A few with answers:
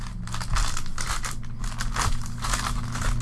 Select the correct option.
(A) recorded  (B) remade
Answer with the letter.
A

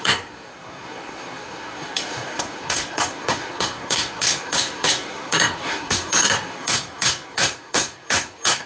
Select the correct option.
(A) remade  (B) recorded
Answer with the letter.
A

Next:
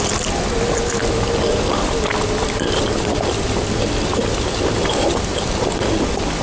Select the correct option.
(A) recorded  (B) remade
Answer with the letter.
A